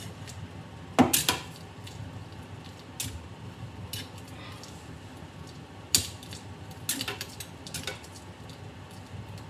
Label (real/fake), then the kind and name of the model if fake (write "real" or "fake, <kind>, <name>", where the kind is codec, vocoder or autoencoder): real